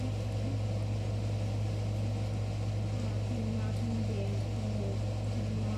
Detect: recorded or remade recorded